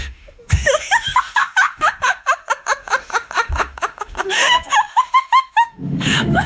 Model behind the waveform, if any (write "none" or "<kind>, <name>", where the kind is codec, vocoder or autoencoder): autoencoder, DAC-VAE